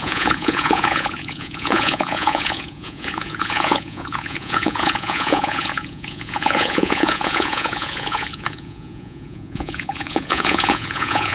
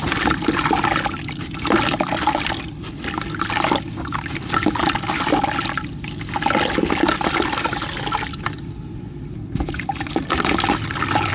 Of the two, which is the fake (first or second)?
first